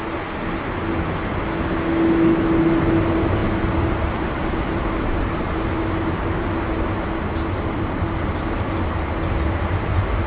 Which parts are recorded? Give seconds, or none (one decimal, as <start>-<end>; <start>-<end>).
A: 0.0-10.3

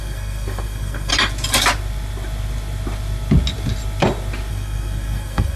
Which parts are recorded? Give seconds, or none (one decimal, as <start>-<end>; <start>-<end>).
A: 1.1-4.5

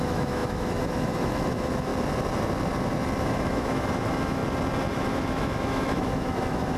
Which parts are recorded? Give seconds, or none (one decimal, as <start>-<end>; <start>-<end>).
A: 1.9-3.2; 4.4-4.9

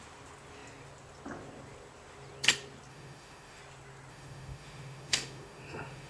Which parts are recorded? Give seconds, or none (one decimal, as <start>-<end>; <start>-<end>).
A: 0.0-2.9; 3.6-4.1